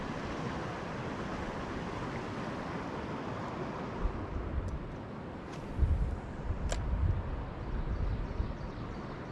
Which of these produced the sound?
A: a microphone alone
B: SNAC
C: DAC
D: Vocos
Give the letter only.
A